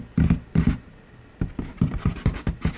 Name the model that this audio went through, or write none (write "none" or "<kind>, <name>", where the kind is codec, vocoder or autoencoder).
none